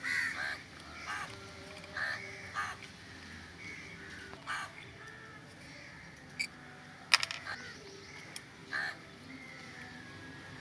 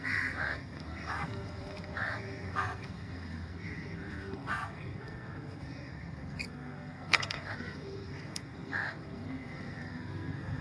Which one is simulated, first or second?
second